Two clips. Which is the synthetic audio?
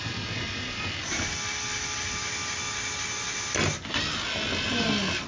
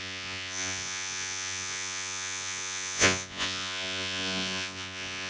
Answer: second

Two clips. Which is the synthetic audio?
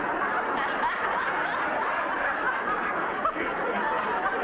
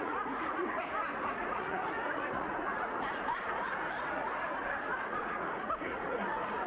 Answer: second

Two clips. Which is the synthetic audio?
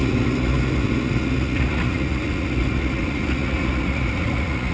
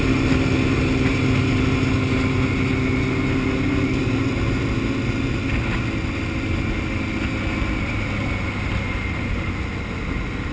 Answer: first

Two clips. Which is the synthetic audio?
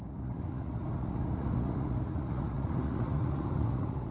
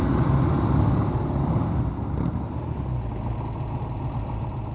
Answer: first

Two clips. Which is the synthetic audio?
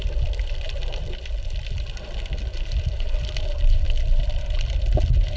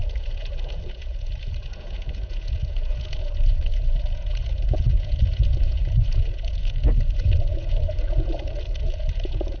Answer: second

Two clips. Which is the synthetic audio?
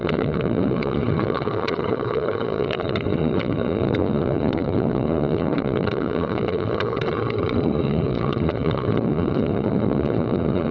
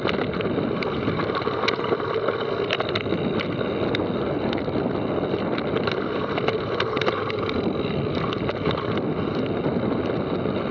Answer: first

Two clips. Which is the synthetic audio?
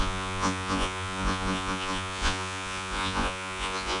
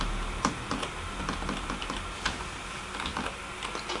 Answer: first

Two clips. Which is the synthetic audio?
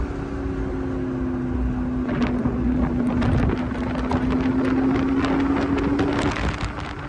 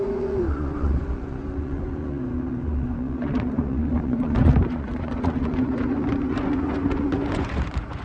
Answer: second